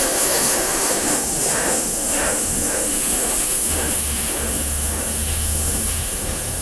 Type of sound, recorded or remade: remade